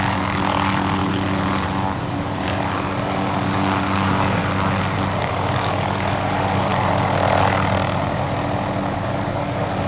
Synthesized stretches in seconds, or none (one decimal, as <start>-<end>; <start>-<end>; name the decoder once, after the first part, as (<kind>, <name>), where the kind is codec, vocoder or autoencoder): 0.0-1.0 (codec, DAC); 2.0-4.4; 5.2-6.7; 8.9-9.9